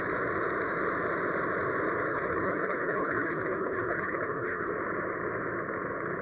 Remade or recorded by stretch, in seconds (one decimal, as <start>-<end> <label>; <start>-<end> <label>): 0.0-2.1 recorded; 2.1-4.7 remade; 4.7-6.2 recorded

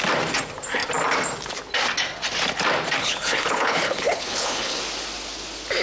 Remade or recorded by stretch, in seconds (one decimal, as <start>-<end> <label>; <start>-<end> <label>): 0.0-3.0 recorded; 3.0-4.8 remade; 4.8-5.8 recorded

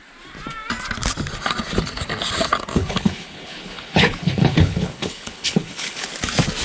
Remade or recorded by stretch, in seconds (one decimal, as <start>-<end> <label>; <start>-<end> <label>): 0.0-2.8 recorded; 2.8-6.1 remade; 6.1-6.6 recorded

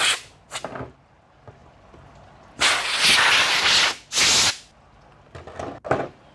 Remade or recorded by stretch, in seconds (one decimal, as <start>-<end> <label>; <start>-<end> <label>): 0.0-6.3 recorded

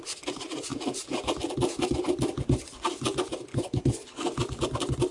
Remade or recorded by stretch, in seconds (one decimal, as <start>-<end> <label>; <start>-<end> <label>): 0.0-3.5 recorded; 3.5-4.2 remade; 4.2-5.1 recorded